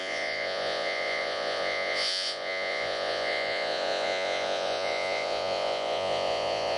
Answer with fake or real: fake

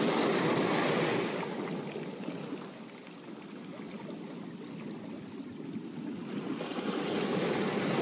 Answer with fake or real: real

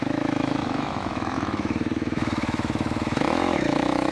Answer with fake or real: fake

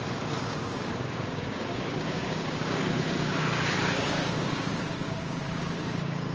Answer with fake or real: fake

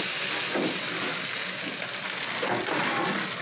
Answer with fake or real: real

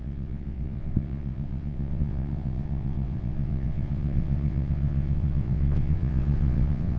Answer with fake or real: fake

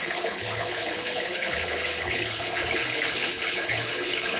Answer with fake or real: fake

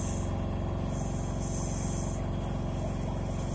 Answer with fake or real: real